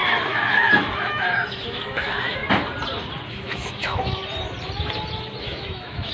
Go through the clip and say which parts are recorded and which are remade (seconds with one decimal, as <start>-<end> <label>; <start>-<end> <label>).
0.0-2.4 remade; 2.4-3.3 recorded; 3.3-4.2 remade; 4.2-5.4 recorded; 5.4-6.1 remade